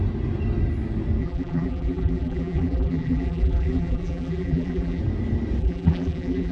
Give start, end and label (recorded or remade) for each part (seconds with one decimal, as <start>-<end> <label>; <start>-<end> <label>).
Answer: 0.0-1.2 recorded; 1.2-5.0 remade; 5.0-5.6 recorded; 5.6-6.5 remade